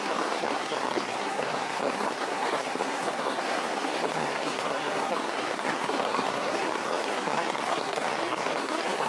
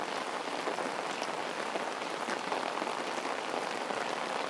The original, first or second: second